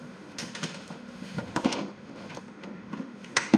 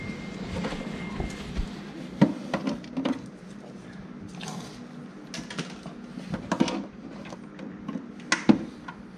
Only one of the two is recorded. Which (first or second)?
second